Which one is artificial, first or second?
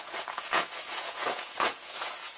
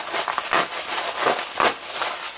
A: first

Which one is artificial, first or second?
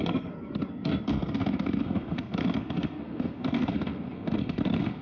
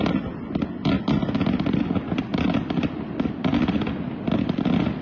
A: first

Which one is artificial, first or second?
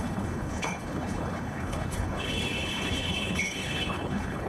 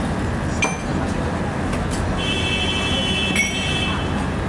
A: first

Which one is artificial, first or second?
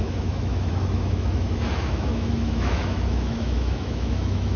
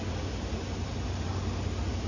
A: first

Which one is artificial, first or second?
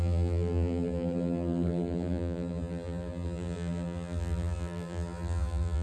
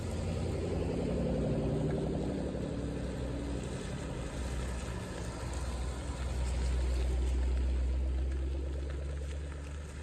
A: first